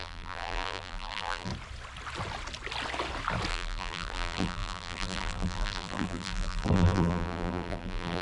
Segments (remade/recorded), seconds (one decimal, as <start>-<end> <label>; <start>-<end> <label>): 0.0-1.5 remade; 1.5-3.5 recorded; 3.5-8.2 remade